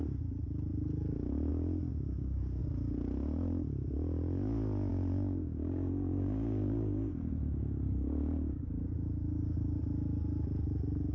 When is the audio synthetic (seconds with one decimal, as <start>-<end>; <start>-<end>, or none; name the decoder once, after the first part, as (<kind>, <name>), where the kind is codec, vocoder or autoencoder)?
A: 1.9-2.6 (codec, DAC); 4.9-9.8